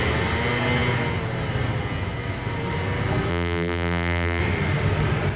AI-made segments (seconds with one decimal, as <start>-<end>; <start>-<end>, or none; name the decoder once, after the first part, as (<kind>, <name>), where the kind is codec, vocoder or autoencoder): 3.3-4.4 (vocoder, BigVGAN v2)